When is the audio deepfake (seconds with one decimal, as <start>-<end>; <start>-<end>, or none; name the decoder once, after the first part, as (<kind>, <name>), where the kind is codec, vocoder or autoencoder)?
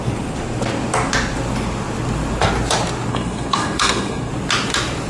3.1-4.3 (codec, SNAC)